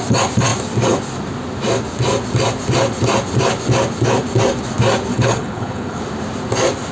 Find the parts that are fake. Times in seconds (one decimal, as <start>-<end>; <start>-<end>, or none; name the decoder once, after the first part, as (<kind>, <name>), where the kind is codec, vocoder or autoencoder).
5.1-6.0 (codec, HILCodec)